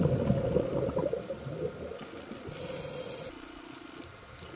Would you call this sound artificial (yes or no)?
no